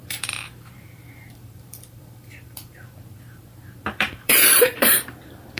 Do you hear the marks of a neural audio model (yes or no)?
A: yes